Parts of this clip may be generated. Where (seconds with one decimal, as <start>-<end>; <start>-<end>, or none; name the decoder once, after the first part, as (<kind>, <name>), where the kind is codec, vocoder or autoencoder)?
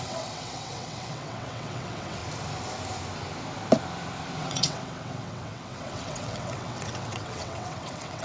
0.0-2.2 (vocoder, WaveNeXt); 4.4-8.2